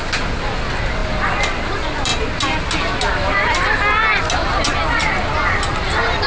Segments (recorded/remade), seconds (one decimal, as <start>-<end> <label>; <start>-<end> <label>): 0.0-6.3 recorded